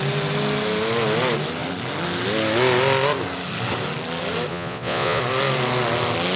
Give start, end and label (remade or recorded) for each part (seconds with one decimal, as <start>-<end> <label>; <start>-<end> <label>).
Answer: 0.0-4.5 recorded; 4.5-5.2 remade; 5.2-6.4 recorded